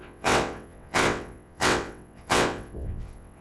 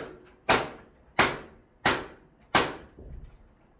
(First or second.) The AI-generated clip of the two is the first